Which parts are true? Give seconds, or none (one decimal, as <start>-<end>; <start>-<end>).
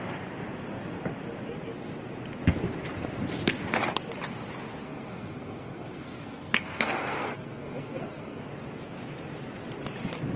0.0-4.8; 8.4-10.4